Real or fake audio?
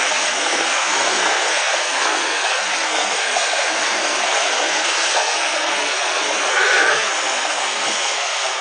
fake